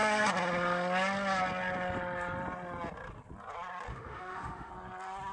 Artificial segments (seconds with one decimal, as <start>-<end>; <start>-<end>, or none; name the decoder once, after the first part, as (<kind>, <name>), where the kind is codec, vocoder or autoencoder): 3.9-4.7 (autoencoder, DAC-VAE)